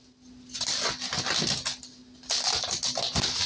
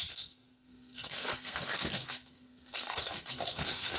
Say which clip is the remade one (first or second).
second